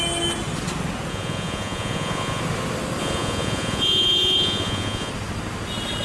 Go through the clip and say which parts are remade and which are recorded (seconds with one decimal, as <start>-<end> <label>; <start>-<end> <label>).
0.0-1.1 recorded; 1.1-2.4 remade; 2.4-3.0 recorded; 3.0-5.1 remade; 5.1-6.0 recorded

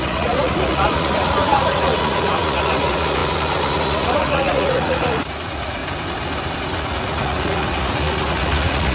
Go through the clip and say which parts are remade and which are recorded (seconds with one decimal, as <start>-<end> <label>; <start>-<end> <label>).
0.0-5.8 remade; 5.8-6.6 recorded; 6.6-8.9 remade

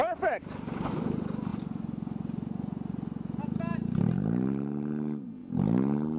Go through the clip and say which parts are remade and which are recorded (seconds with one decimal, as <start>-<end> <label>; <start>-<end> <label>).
0.0-6.2 recorded

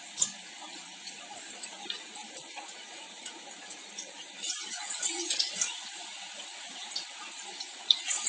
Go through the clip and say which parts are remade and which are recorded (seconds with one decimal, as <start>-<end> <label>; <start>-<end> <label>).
0.0-8.3 remade

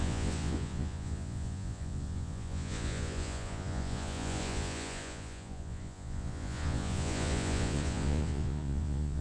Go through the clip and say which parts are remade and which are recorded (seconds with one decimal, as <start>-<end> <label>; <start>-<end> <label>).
0.0-9.2 remade

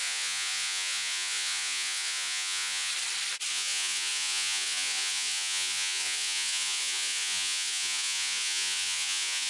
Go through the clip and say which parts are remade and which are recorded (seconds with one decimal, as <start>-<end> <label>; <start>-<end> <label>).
0.0-2.9 remade; 2.9-3.5 recorded; 3.5-9.5 remade